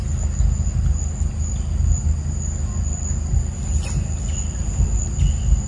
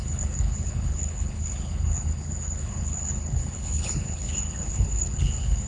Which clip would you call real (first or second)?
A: first